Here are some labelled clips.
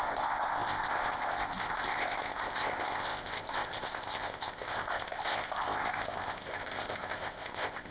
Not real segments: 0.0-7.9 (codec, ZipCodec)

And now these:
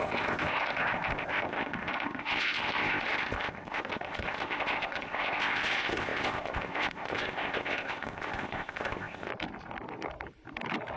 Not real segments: 0.0-9.3 (codec, ZipCodec)

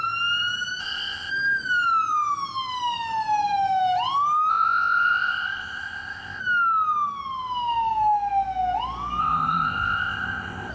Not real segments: 0.8-1.3 (codec, ZipCodec); 4.5-6.4; 9.2-10.7

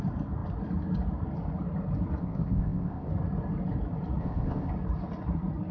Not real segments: 2.2-3.1 (codec, ZipCodec); 4.2-4.7

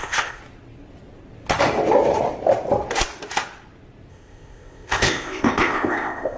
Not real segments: 0.0-0.4 (codec, ZipCodec); 4.1-6.4

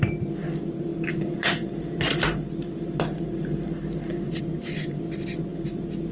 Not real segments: none